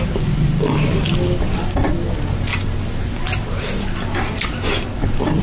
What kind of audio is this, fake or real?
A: real